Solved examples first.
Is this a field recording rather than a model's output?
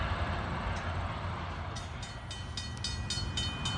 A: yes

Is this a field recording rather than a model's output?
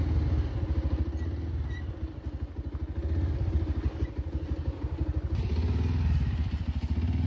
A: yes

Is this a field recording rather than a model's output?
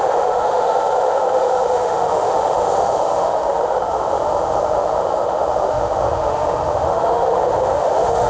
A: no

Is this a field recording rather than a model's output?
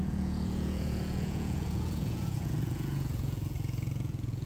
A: no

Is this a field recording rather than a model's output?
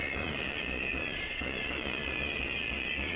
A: no